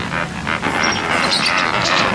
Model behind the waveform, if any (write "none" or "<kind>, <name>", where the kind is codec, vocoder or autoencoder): none